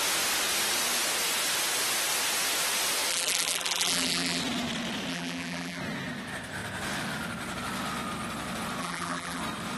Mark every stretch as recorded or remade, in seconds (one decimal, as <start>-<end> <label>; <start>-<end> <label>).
0.0-3.1 recorded; 3.1-4.4 remade; 4.4-5.1 recorded; 5.1-5.8 remade; 5.8-8.8 recorded; 8.8-9.4 remade; 9.4-9.8 recorded